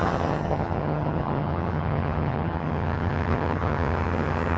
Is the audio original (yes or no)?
no